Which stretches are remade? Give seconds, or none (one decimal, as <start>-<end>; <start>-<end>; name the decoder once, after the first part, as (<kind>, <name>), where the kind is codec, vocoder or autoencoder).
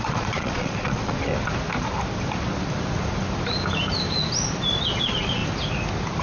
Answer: 0.0-1.3 (vocoder, Vocos); 5.0-5.4